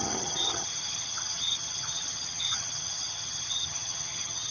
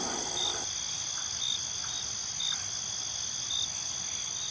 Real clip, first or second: second